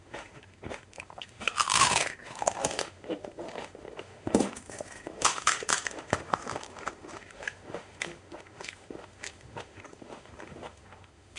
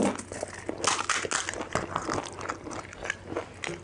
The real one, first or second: second